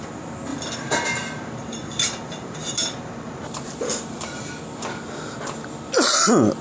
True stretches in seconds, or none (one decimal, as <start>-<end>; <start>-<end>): 0.0-0.5; 4.5-6.6